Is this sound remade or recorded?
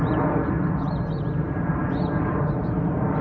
recorded